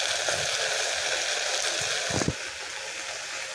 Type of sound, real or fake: real